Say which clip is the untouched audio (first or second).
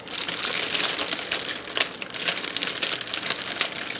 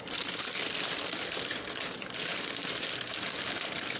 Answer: first